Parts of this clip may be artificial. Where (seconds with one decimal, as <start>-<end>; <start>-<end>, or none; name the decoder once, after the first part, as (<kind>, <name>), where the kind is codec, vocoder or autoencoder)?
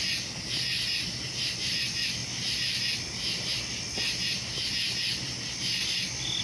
none